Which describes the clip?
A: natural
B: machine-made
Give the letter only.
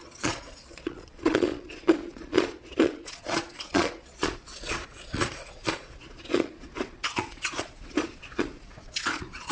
B